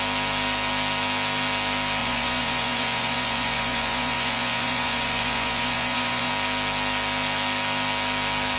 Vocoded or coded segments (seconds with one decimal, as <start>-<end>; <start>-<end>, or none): 2.0-6.3